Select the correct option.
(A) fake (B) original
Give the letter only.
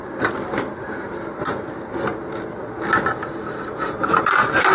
B